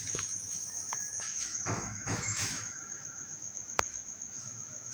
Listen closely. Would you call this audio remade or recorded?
remade